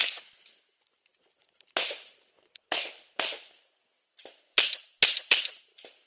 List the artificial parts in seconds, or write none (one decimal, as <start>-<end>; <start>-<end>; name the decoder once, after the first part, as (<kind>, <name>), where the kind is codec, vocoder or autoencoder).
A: none